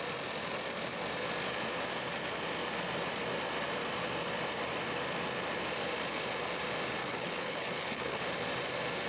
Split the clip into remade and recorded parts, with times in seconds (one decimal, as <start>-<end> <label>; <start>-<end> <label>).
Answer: 0.0-7.0 recorded; 7.0-8.2 remade; 8.2-9.1 recorded